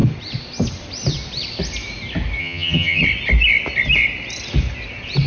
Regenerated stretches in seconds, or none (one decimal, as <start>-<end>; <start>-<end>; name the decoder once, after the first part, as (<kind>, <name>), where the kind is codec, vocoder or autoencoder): 2.4-3.0 (vocoder, HiFi-GAN)